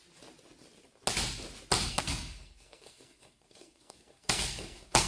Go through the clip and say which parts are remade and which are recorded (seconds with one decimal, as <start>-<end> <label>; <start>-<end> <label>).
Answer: 0.0-1.9 recorded; 1.9-5.1 remade